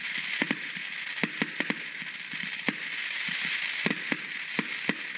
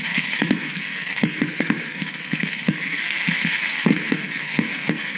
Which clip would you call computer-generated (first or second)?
second